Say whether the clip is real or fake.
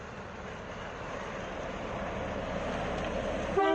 real